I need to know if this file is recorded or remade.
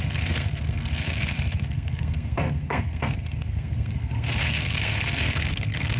remade